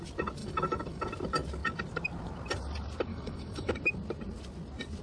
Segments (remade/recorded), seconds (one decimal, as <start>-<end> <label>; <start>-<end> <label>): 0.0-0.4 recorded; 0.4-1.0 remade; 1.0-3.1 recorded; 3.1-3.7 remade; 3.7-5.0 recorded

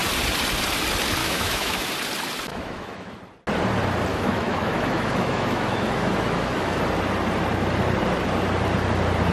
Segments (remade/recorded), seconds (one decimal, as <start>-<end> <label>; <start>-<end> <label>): 0.0-1.2 recorded; 1.2-1.9 remade; 1.9-2.5 recorded; 2.5-3.2 remade; 3.2-4.1 recorded; 4.1-6.8 remade; 6.8-9.3 recorded

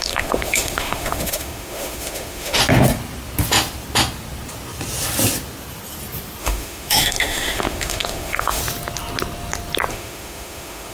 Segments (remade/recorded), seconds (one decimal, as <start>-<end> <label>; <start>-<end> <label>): 0.0-2.6 remade; 2.6-6.4 recorded; 6.4-8.6 remade; 8.6-9.9 recorded; 9.9-10.9 remade

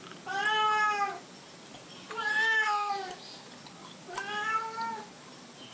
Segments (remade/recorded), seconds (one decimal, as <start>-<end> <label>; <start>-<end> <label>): 0.0-2.3 recorded; 2.3-2.9 remade; 2.9-5.7 recorded

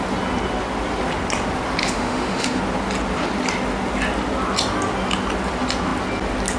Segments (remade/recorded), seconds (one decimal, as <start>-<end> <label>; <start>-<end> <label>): 0.0-1.8 recorded; 1.8-2.6 remade; 2.6-6.6 recorded